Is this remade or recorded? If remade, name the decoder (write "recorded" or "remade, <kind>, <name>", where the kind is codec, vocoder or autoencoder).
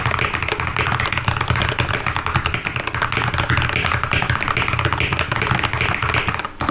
recorded